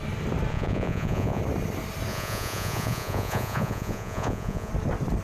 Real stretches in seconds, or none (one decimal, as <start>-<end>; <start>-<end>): 0.0-0.5; 1.4-2.1; 4.7-5.2